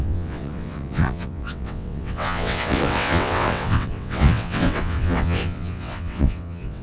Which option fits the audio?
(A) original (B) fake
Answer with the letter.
B